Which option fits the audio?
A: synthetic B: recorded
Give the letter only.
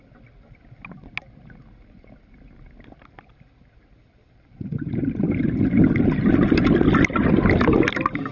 B